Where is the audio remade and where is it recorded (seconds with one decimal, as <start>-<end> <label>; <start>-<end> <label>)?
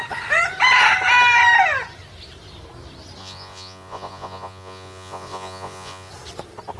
0.0-3.2 recorded; 3.2-6.1 remade; 6.1-6.8 recorded